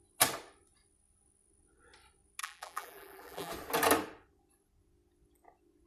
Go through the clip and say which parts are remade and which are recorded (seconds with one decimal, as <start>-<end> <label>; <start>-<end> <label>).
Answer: 0.0-2.4 recorded; 2.4-3.5 remade; 3.5-5.9 recorded